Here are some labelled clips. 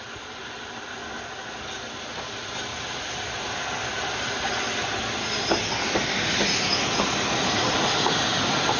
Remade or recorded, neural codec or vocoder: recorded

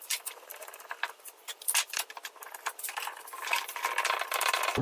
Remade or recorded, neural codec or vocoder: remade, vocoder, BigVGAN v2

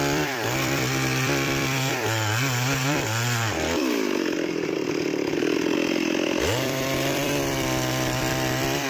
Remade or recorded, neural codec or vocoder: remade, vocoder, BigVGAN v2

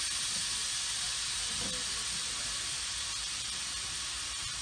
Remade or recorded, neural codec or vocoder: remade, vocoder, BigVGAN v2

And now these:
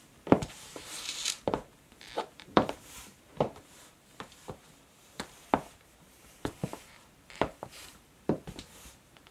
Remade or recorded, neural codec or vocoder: remade, vocoder, BigVGAN v2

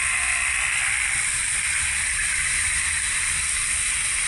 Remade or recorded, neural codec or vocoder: recorded